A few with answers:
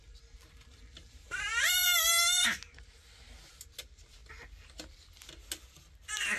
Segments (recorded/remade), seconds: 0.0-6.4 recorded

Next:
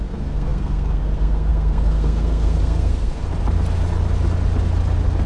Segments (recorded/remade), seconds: 0.0-3.2 remade; 3.2-5.3 recorded

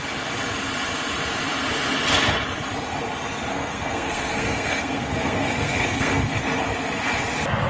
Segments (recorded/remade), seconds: 0.0-3.5 recorded; 3.5-6.4 remade; 6.4-7.7 recorded

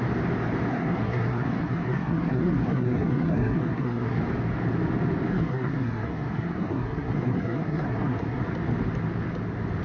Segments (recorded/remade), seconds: 0.0-0.7 recorded; 0.7-4.2 remade; 4.2-5.3 recorded; 5.3-8.4 remade; 8.4-9.8 recorded

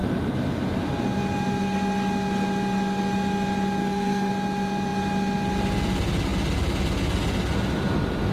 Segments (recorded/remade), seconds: 0.0-3.8 recorded; 3.8-4.3 remade; 4.3-8.3 recorded

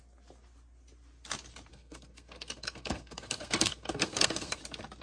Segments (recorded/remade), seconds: 0.0-1.7 recorded; 1.7-4.6 remade; 4.6-5.0 recorded

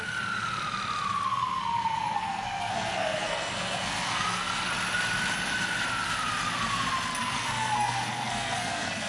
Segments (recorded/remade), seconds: 0.0-1.3 recorded; 1.3-4.7 remade; 4.7-7.1 recorded; 7.1-9.1 remade

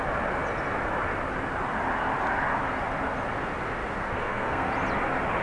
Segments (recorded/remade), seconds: 0.0-4.0 recorded; 4.0-4.7 remade; 4.7-5.4 recorded